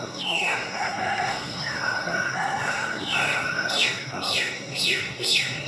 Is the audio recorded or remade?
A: remade